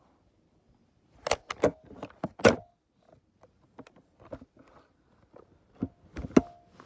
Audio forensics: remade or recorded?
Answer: recorded